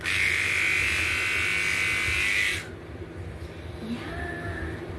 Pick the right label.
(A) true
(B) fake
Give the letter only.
A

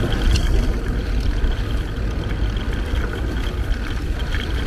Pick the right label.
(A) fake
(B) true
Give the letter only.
B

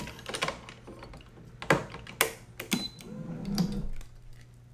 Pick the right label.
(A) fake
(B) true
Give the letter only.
B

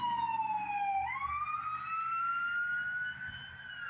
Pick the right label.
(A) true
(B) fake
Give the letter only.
A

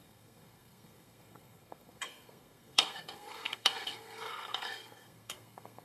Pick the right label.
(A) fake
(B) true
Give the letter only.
A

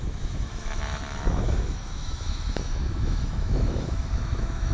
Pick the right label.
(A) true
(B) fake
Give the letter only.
B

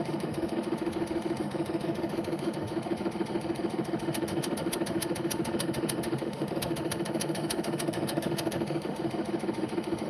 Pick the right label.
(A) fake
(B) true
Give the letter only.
A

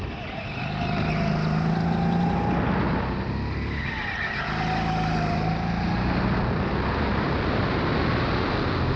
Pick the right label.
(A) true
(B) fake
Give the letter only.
A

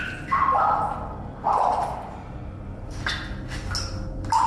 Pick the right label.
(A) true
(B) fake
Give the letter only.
A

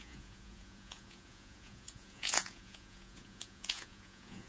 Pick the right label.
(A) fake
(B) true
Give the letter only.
A